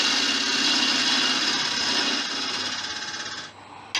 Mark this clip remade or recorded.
recorded